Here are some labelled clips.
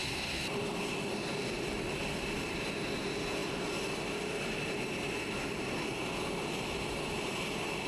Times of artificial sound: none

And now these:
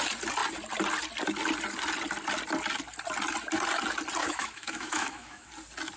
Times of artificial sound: 4.2-5.5 (autoencoder, DAC-VAE)

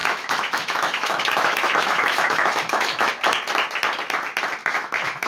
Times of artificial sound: 0.0-3.1 (autoencoder, DAC-VAE); 4.6-5.3

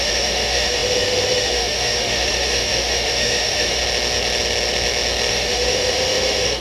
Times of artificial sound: 0.0-3.8 (autoencoder, DAC-VAE); 5.3-6.6

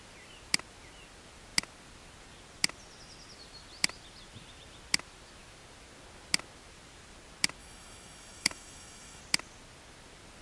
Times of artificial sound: 7.6-9.2 (autoencoder, DAC-VAE)

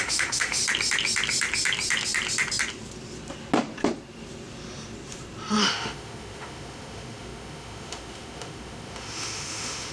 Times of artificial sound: 0.0-0.6 (autoencoder, DAC-VAE); 5.6-9.9

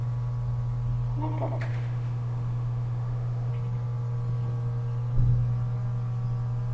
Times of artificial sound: 1.7-3.5 (autoencoder, DAC-VAE)

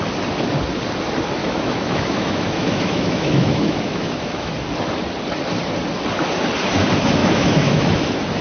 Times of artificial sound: 1.4-4.5 (autoencoder, DAC-VAE); 7.2-7.9